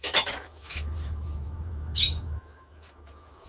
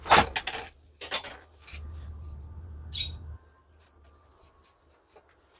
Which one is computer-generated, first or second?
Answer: first